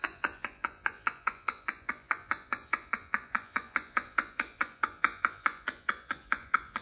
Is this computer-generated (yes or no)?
yes